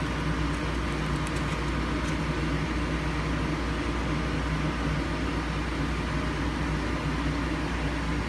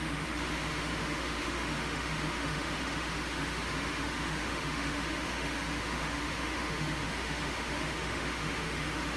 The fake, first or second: second